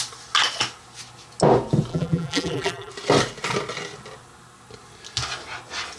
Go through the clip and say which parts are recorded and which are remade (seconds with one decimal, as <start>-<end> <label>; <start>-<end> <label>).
0.0-1.9 recorded; 1.9-2.9 remade; 2.9-6.0 recorded